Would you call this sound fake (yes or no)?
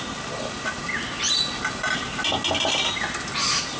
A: no